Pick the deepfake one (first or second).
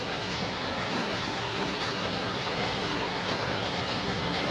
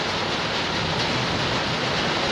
first